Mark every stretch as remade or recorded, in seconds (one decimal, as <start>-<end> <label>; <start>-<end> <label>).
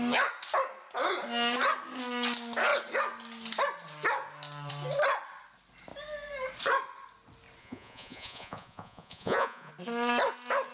0.0-7.6 recorded; 7.6-9.7 remade; 9.7-10.7 recorded